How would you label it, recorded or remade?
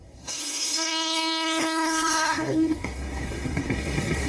remade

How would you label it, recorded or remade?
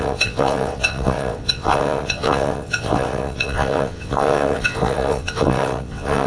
remade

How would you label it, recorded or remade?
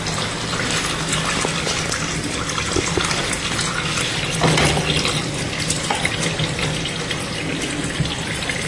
recorded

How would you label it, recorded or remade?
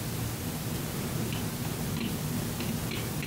recorded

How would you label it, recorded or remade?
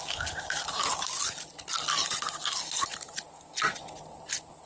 recorded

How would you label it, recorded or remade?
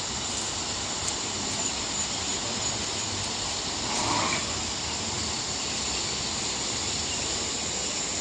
recorded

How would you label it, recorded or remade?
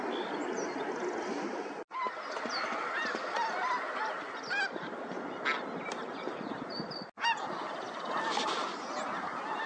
recorded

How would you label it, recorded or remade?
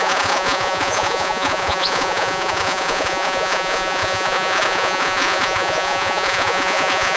remade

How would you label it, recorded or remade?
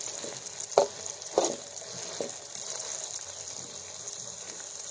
recorded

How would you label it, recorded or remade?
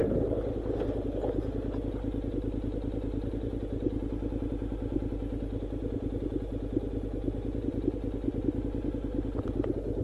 recorded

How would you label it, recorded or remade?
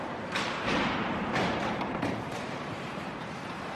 remade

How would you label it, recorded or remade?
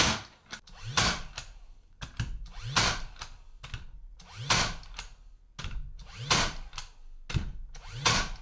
recorded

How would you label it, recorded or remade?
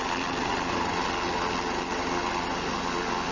recorded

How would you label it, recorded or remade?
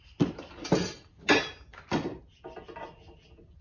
recorded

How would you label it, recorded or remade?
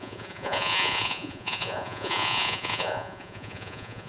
remade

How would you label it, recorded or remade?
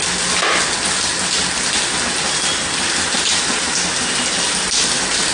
recorded